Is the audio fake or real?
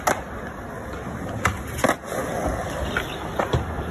real